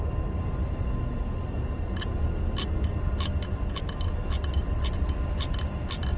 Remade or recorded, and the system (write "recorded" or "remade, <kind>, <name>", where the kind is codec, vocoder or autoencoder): recorded